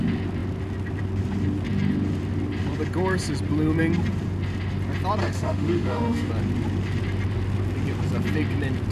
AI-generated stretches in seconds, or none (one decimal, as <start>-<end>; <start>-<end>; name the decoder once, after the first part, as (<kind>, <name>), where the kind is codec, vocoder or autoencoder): 5.2-6.3 (autoencoder, DAC-VAE)